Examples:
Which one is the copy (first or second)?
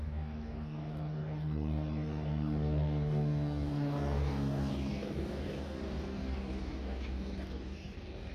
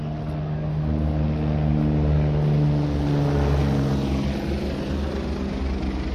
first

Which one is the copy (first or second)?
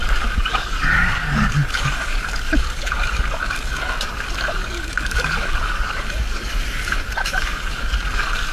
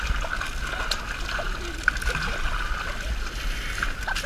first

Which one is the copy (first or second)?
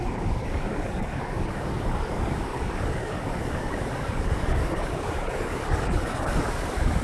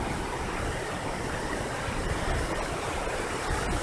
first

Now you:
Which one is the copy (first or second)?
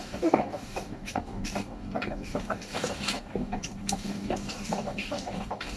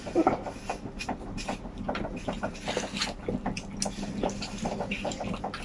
first